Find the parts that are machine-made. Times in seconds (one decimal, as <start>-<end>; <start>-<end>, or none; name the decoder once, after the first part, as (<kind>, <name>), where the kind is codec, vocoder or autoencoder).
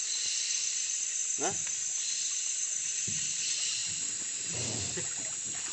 0.0-1.2 (vocoder, BigVGAN v2); 2.3-3.8; 4.5-5.7